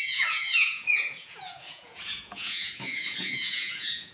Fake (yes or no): yes